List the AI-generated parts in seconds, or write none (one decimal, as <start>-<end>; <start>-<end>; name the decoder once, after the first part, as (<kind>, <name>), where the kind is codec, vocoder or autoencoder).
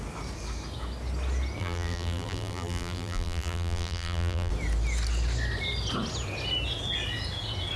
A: 1.6-4.5 (vocoder, BigVGAN v2)